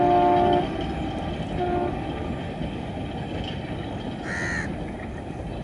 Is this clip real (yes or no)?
yes